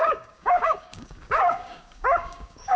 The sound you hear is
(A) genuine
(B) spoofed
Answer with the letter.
B